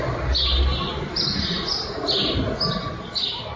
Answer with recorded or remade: recorded